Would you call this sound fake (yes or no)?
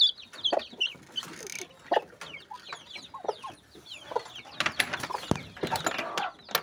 no